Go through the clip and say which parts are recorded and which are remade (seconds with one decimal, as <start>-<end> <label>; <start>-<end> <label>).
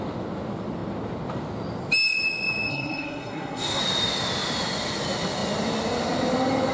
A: 0.0-2.7 recorded; 2.7-3.8 remade; 3.8-6.7 recorded